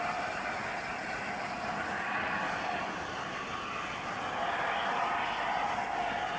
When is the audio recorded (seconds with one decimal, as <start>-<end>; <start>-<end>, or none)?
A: 0.0-6.4